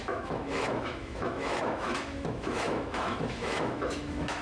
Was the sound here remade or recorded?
remade